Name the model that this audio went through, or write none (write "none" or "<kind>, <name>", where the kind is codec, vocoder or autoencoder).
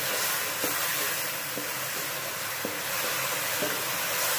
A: none